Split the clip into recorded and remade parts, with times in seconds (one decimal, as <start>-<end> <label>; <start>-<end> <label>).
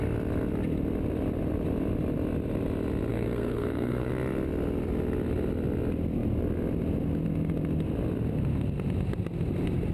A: 0.0-3.1 recorded; 3.1-4.1 remade; 4.1-9.9 recorded